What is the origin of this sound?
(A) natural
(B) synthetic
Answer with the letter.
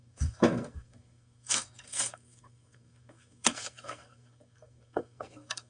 B